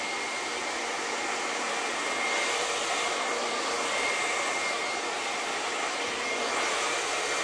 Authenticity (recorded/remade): remade